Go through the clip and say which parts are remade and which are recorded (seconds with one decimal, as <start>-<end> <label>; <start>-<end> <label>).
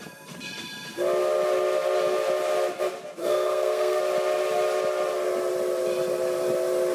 0.0-3.2 recorded; 3.2-4.0 remade; 4.0-6.9 recorded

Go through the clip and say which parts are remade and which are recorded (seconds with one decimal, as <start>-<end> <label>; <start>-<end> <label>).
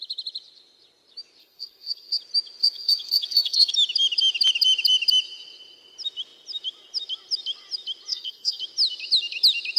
0.0-1.4 recorded; 1.4-2.2 remade; 2.2-2.6 recorded; 2.6-3.7 remade; 3.7-8.1 recorded; 8.1-8.6 remade; 8.6-9.8 recorded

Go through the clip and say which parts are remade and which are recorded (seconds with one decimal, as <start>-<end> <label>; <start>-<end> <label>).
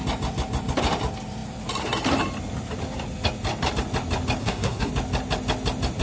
0.0-4.4 recorded; 4.4-4.9 remade; 4.9-6.0 recorded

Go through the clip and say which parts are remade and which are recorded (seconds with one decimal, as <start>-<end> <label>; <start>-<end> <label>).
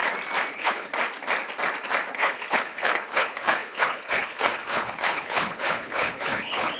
0.0-0.5 recorded; 0.5-0.9 remade; 0.9-2.1 recorded; 2.1-6.8 remade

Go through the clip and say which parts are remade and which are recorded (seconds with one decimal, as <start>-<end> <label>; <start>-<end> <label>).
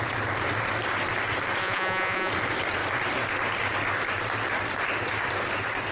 0.0-1.6 recorded; 1.6-2.3 remade; 2.3-5.9 recorded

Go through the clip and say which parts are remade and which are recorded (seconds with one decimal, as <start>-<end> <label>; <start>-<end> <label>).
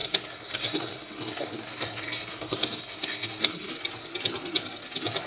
0.0-3.7 remade; 3.7-5.3 recorded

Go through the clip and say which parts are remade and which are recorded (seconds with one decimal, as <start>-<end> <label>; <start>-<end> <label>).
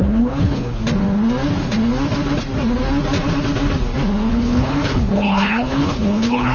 0.0-0.8 remade; 0.8-4.3 recorded; 4.3-6.5 remade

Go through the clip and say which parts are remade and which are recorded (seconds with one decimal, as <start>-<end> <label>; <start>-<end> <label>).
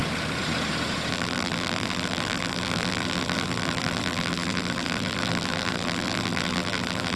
0.0-1.1 recorded; 1.1-7.2 remade